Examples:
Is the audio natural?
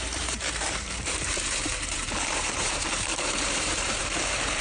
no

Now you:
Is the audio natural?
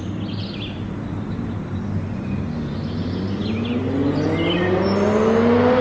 yes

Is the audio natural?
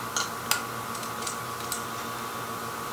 yes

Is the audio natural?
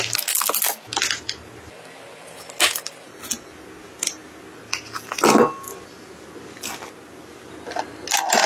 yes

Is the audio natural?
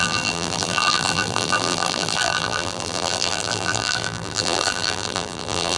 no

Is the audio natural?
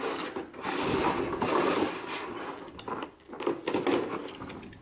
yes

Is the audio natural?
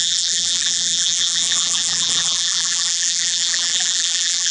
no